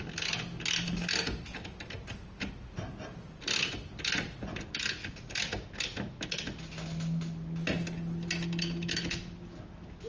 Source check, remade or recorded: recorded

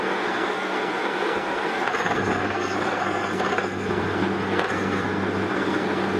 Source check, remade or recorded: remade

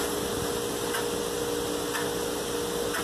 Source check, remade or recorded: recorded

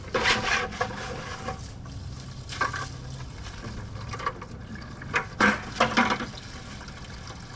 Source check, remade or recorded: recorded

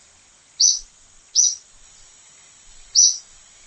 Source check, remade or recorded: recorded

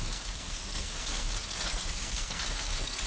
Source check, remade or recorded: remade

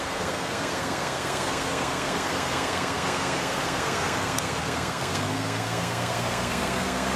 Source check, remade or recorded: remade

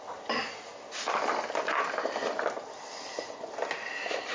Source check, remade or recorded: recorded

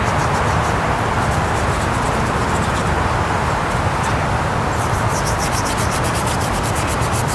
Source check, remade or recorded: recorded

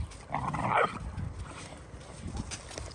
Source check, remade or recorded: recorded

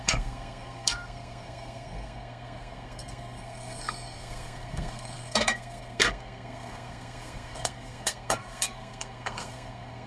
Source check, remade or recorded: remade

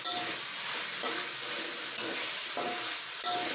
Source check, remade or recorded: recorded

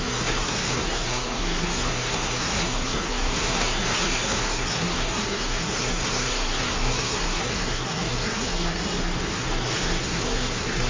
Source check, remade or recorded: remade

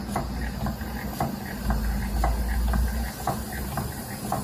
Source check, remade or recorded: recorded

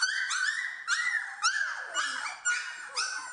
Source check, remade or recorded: recorded